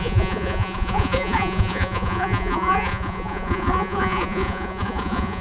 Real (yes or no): no